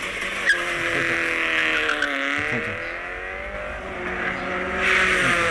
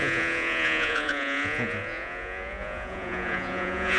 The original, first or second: first